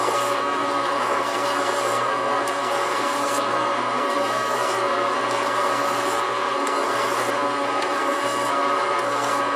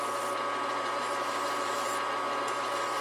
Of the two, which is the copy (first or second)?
first